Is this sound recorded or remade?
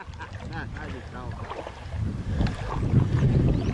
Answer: recorded